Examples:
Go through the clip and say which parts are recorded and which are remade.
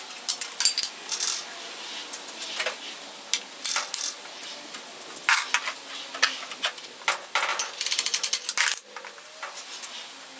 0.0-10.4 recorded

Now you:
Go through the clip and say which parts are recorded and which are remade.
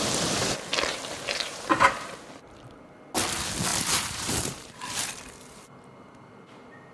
0.0-0.9 recorded; 0.9-2.1 remade; 2.1-3.7 recorded; 3.7-5.1 remade; 5.1-6.9 recorded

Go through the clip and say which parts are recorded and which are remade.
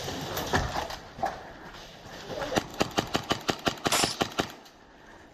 0.0-5.3 recorded